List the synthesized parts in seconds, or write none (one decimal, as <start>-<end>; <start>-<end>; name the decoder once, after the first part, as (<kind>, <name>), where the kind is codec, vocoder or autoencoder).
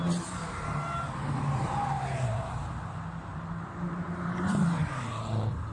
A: 0.0-2.7 (vocoder, BigVGAN v2); 3.3-5.1